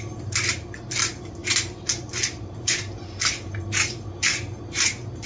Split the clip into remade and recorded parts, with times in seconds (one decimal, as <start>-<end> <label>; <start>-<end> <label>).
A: 0.0-5.3 remade